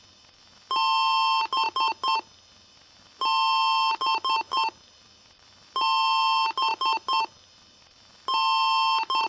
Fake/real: real